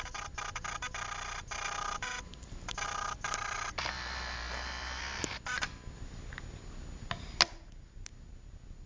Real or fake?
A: real